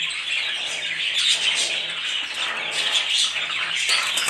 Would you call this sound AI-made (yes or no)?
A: no